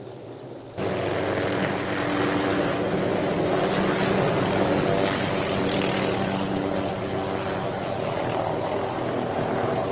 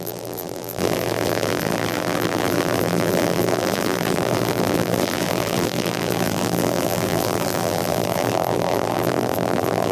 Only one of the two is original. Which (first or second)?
first